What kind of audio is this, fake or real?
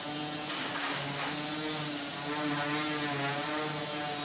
real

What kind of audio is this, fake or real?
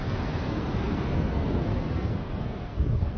fake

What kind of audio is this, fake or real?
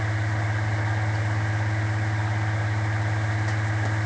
real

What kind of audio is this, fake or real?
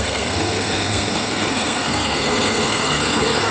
fake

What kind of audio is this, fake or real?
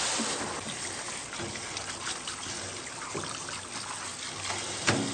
real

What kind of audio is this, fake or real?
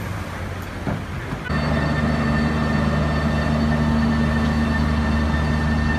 real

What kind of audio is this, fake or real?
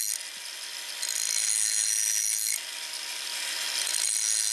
real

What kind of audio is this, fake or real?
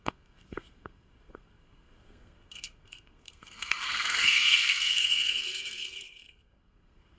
fake